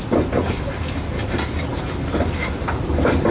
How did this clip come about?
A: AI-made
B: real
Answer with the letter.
B